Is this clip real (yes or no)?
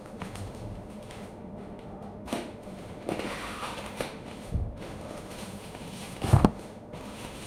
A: no